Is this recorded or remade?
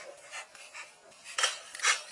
recorded